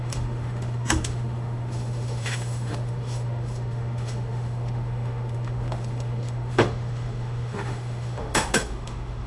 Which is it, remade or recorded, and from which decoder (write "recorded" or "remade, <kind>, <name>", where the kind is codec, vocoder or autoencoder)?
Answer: remade, autoencoder, DAC-VAE